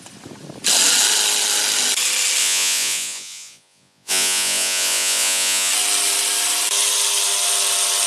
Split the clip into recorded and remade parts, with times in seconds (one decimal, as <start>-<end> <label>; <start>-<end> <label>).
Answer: 0.0-2.4 recorded; 2.4-5.7 remade; 5.7-8.1 recorded